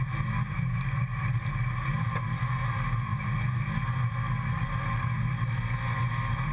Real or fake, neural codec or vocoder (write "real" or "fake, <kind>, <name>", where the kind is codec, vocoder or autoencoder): real